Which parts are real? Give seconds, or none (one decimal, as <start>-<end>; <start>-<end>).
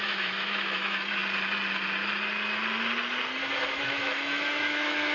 1.2-3.8